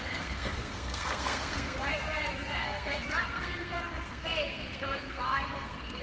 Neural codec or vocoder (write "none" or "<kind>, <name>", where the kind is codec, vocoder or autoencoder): codec, SNAC